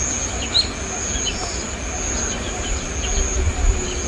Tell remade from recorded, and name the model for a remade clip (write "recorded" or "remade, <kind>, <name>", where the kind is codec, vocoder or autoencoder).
recorded